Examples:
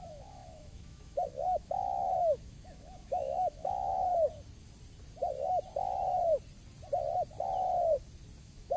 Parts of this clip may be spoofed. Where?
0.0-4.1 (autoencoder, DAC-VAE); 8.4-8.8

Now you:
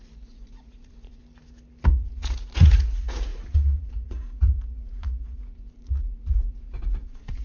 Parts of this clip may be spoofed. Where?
0.0-1.2 (vocoder, Vocos); 1.9-7.4